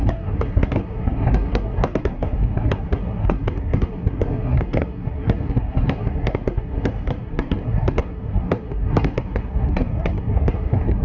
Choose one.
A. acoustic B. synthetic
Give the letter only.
B